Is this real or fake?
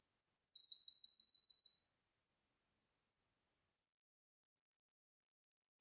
real